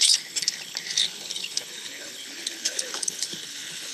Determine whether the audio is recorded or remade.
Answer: remade